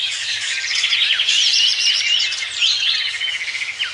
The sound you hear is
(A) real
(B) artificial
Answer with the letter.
A